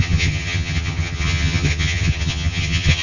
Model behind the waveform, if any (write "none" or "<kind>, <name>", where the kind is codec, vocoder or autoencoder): vocoder, HiFi-GAN